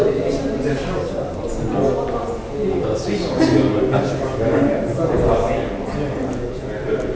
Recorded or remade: recorded